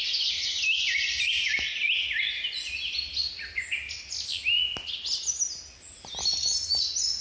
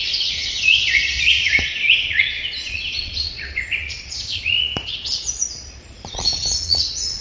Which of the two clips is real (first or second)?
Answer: first